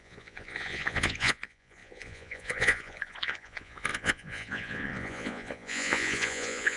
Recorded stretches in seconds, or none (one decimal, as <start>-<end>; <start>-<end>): none